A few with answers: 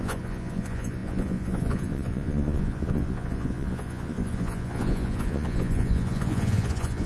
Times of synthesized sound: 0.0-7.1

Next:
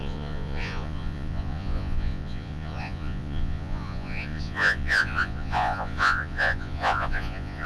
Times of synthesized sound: 0.0-7.7

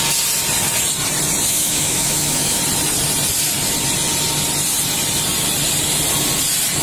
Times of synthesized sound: 1.5-2.6